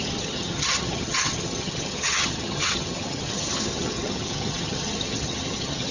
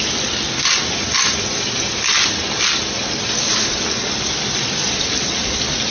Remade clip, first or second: first